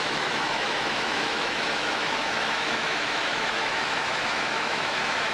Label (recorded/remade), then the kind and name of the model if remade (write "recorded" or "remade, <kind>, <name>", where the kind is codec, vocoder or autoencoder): remade, autoencoder, DAC-VAE